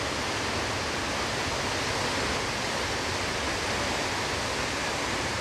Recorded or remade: recorded